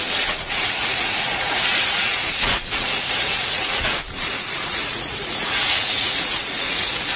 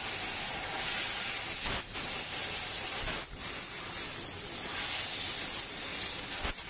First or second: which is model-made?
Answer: first